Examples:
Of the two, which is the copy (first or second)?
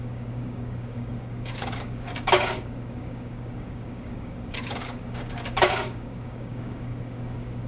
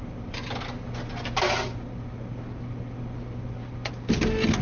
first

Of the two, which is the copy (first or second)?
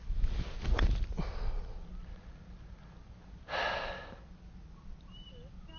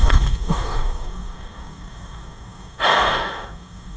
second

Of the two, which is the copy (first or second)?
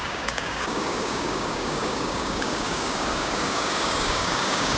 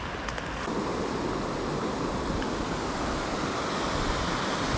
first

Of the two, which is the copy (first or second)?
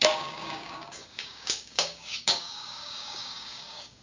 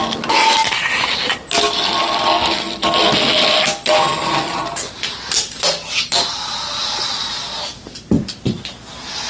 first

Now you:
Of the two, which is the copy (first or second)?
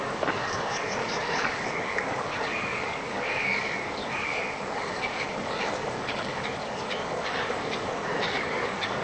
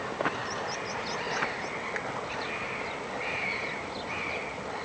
first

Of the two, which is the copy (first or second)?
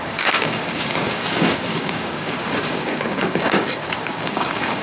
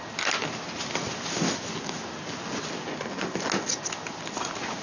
first